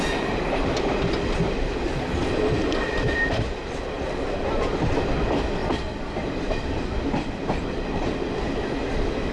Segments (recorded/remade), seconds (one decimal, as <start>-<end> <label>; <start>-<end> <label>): 0.0-9.3 recorded